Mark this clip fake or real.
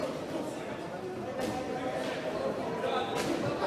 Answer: real